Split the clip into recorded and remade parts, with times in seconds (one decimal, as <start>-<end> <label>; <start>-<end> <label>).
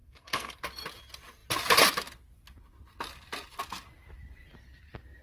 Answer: 0.0-0.6 remade; 0.6-5.2 recorded